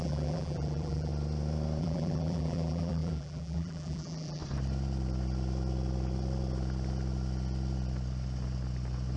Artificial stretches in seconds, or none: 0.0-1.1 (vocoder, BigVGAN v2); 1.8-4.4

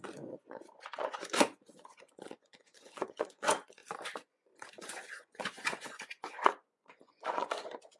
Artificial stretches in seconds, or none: 0.0-3.8 (vocoder, Vocos); 4.3-8.0

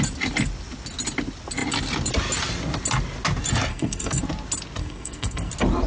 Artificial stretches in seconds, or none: 3.7-4.2 (codec, SNAC); 4.8-5.5

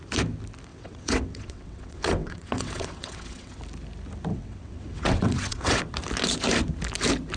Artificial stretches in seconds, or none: 0.7-3.6 (vocoder, WaveNeXt); 4.3-5.8